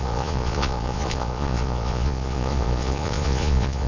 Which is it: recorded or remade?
remade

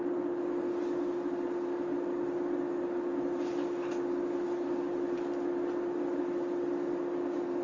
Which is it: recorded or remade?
recorded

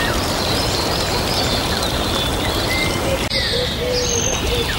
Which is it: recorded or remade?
recorded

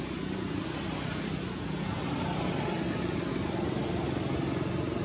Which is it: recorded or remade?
recorded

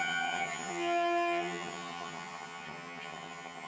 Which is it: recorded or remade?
remade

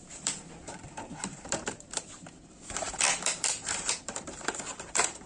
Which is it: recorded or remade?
remade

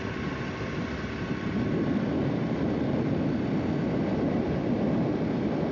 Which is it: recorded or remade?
recorded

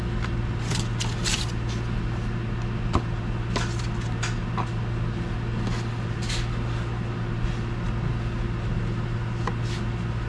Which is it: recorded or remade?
recorded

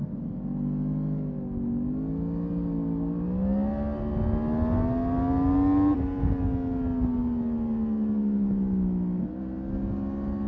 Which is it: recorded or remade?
recorded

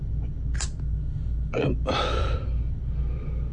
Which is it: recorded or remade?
recorded